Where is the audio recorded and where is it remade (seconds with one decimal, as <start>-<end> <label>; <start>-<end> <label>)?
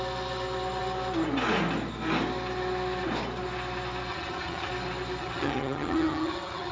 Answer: 0.0-4.1 recorded; 4.1-4.7 remade; 4.7-5.2 recorded; 5.2-6.7 remade